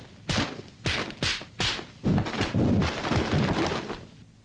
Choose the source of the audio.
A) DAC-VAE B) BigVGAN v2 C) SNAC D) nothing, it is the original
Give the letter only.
D